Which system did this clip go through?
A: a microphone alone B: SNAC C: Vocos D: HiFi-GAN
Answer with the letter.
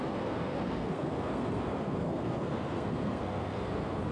B